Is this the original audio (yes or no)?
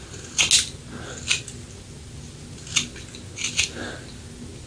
yes